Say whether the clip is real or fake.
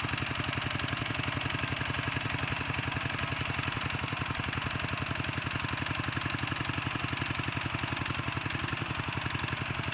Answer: fake